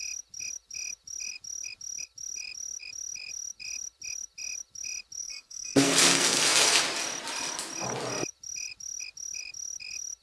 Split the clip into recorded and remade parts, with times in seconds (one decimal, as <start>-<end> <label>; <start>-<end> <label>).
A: 0.0-5.2 recorded; 5.2-6.8 remade; 6.8-10.2 recorded